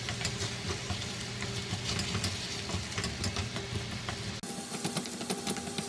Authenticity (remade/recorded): recorded